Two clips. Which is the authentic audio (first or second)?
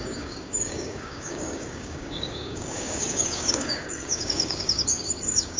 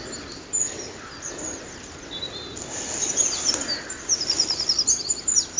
second